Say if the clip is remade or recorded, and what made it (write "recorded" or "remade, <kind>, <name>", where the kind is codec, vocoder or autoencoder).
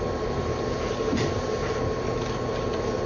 recorded